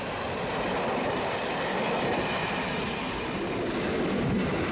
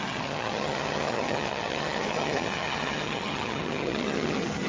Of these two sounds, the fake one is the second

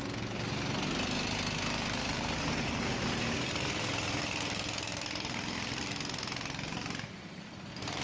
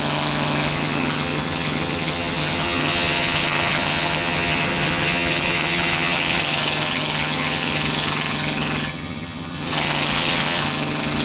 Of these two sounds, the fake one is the second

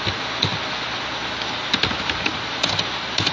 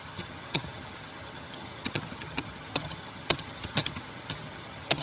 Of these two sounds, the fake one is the second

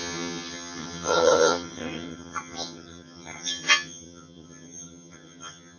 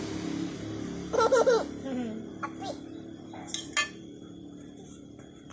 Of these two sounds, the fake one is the first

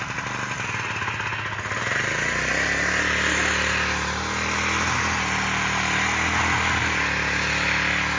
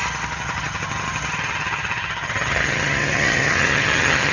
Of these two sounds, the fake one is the second